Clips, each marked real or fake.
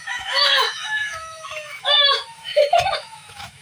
fake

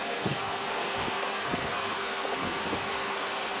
fake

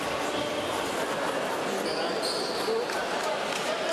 real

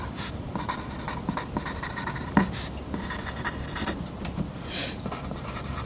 real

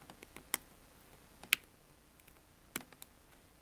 real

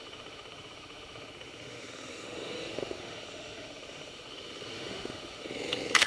fake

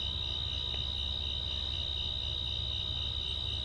real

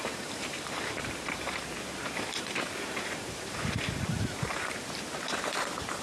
fake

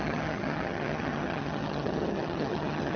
fake